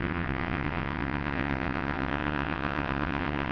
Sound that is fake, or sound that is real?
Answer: fake